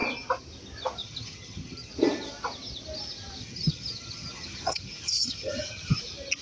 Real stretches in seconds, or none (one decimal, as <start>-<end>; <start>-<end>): 0.0-1.0; 1.9-3.4; 6.0-6.4